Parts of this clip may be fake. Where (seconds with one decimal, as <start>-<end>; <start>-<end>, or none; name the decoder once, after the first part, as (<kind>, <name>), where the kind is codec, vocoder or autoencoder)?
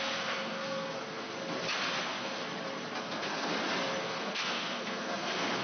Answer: 0.0-1.3 (codec, SNAC); 2.0-2.4; 3.0-3.5; 4.0-5.6